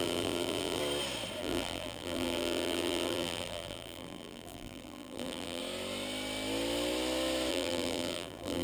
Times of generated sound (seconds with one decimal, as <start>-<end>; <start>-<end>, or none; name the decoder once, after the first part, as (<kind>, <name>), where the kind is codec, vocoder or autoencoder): 0.0-0.8 (vocoder, BigVGAN v2); 1.4-5.6; 7.5-8.6